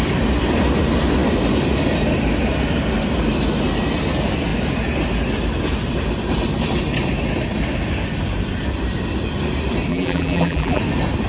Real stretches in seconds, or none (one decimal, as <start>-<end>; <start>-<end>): 0.0-9.9; 10.8-11.3